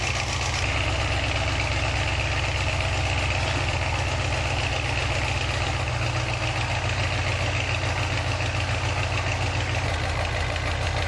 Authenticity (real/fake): real